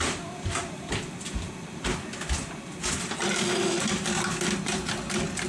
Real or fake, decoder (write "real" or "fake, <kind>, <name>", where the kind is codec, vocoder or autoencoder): real